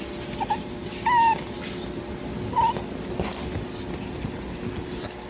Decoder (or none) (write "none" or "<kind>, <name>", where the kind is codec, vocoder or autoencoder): none